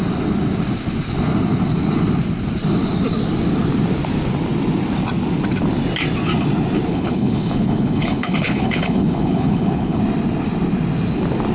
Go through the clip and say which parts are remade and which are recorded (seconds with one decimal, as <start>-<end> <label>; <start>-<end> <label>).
0.0-6.9 recorded; 6.9-10.0 remade; 10.0-11.5 recorded